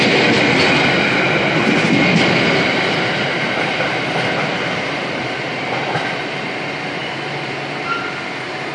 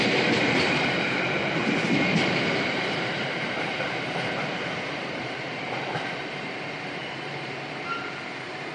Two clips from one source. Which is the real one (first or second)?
first